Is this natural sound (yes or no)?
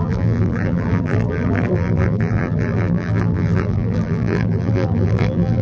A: no